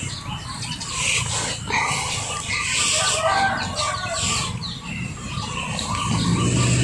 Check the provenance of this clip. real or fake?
real